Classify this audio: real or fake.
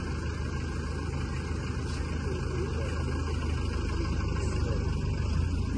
real